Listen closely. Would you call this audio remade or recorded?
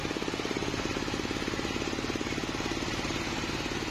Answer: recorded